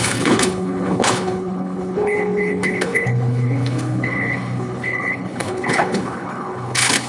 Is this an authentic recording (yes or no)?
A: no